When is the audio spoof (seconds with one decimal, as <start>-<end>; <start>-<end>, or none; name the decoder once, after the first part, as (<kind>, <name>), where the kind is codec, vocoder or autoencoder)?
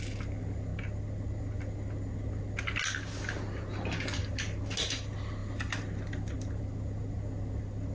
none